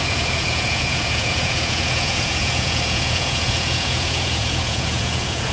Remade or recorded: remade